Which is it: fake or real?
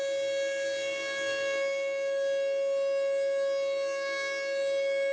real